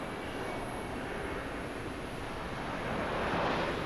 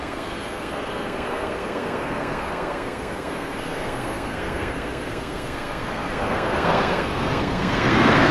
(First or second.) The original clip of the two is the first